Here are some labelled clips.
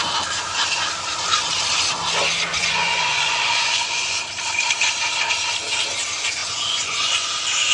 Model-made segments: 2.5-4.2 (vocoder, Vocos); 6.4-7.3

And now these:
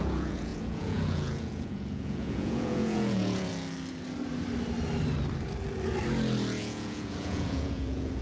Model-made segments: 0.0-3.5 (vocoder, Vocos); 6.6-8.2

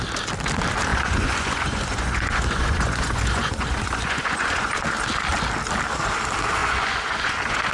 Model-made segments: 0.9-4.8 (vocoder, Vocos); 6.6-7.7

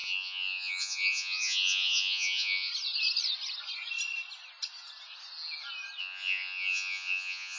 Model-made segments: 0.0-2.7 (vocoder, Vocos); 6.0-7.6